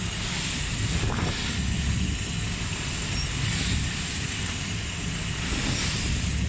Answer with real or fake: real